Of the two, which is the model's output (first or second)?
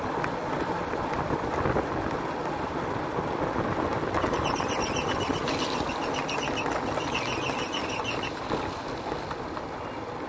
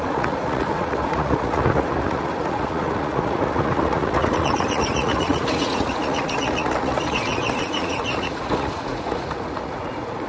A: second